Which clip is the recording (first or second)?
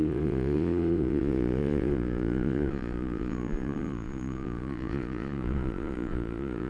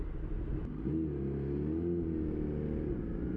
second